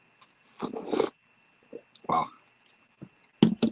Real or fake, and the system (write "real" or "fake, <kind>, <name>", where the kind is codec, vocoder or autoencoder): real